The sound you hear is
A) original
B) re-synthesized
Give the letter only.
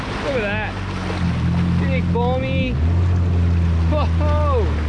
A